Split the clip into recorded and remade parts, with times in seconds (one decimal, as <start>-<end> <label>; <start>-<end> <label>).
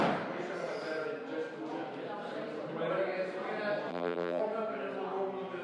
0.0-3.9 recorded; 3.9-4.4 remade; 4.4-5.6 recorded